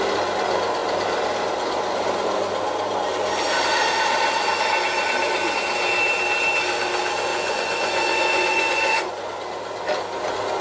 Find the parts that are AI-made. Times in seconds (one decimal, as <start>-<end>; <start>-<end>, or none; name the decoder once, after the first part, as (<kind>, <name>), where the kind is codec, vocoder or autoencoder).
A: 7.3-9.1 (vocoder, Vocos)